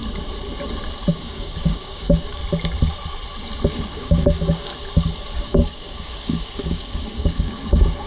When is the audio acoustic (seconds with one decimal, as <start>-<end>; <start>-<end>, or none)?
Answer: 0.0-1.1; 2.4-3.7; 4.7-5.4